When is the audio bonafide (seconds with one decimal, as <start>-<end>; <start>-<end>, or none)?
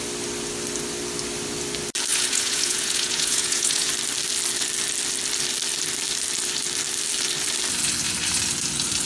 0.0-2.1; 3.9-9.1